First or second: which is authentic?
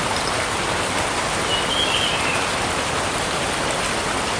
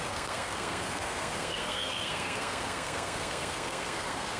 first